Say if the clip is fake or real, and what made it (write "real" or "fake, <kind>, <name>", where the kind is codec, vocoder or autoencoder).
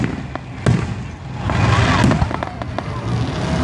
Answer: real